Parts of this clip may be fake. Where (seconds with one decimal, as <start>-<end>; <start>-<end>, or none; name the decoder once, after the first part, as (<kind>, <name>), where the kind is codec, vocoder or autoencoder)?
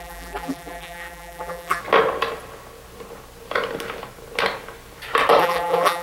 0.0-1.8 (vocoder, BigVGAN v2); 5.4-6.0